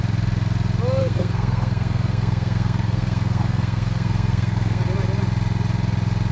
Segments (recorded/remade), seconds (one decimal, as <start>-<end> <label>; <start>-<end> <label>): 0.0-1.0 recorded; 1.0-4.8 remade; 4.8-6.3 recorded